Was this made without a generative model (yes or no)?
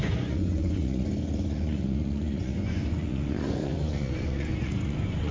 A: no